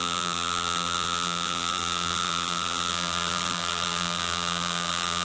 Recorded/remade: remade